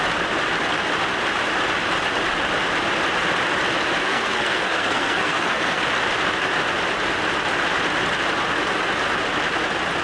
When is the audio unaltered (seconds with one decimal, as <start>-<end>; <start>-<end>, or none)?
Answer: 0.0-4.0; 5.8-10.0